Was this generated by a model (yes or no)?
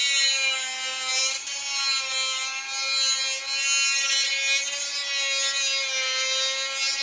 no